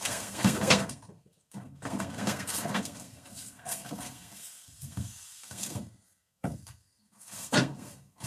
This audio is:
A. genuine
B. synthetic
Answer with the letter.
B